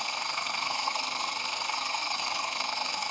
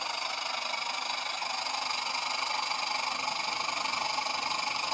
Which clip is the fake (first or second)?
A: first